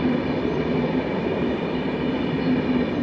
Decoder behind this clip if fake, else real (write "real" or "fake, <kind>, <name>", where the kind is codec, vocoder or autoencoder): real